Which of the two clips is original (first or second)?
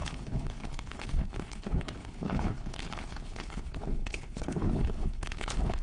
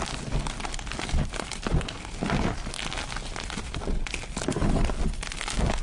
second